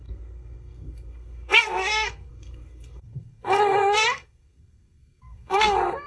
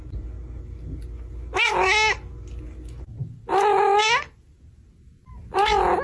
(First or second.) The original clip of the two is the second